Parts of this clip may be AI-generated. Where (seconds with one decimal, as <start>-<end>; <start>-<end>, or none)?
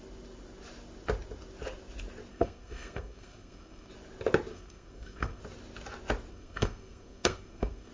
2.3-3.9; 4.5-5.4; 6.3-7.9